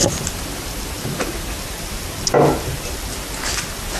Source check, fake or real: real